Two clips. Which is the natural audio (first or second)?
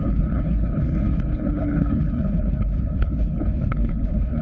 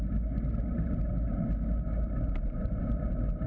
second